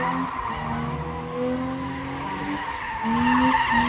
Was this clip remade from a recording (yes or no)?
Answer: no